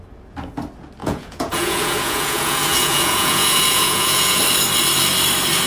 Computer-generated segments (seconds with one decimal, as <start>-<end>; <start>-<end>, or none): 1.0-4.4